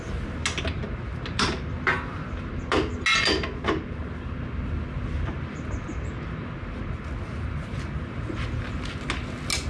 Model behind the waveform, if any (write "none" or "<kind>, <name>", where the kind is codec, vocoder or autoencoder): none